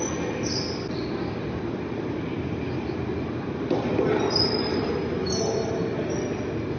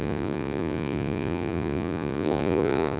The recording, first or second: first